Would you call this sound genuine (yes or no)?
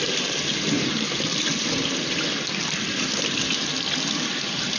no